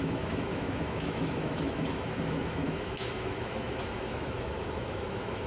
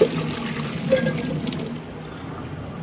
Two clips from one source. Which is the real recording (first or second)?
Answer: second